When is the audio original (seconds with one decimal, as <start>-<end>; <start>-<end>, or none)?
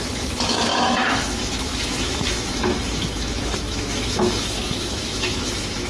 none